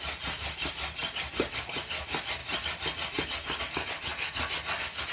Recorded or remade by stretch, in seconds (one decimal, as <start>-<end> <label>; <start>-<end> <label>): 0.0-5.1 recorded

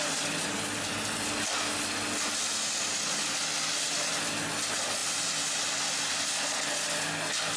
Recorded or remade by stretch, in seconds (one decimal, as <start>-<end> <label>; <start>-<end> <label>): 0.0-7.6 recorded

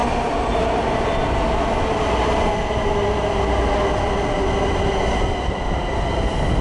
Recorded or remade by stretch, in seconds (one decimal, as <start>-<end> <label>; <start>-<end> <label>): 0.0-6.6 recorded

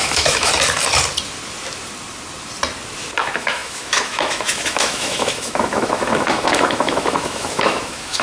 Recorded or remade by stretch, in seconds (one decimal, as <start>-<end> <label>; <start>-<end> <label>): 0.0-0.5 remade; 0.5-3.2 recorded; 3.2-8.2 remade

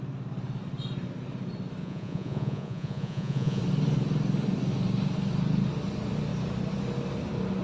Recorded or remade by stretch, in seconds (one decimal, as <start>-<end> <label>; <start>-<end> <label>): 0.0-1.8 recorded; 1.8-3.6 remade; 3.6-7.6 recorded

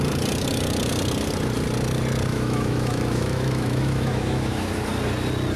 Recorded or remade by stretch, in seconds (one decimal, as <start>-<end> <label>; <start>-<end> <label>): 0.0-2.3 recorded; 2.3-4.7 remade; 4.7-5.6 recorded